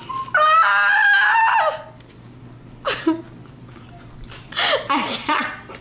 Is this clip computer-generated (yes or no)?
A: no